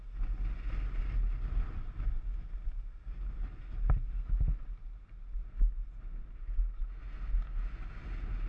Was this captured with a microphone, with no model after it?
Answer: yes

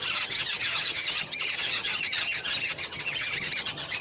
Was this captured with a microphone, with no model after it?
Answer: no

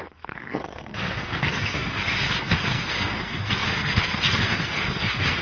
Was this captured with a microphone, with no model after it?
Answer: no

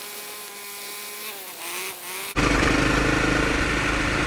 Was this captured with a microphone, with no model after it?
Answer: yes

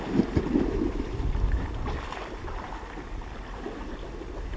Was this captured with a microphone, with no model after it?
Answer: yes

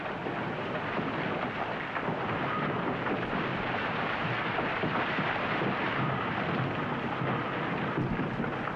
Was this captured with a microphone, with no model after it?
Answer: yes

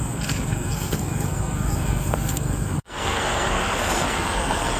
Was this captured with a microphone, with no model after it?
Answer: no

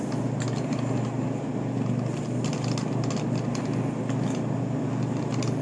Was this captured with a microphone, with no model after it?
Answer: yes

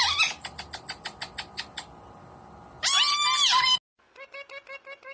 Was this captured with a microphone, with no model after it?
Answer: yes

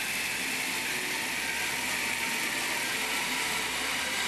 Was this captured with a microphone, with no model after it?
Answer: yes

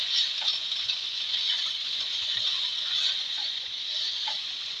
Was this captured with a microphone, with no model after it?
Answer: no